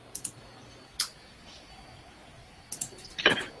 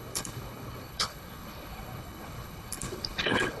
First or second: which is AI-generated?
second